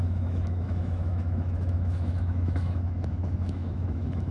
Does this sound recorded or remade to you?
remade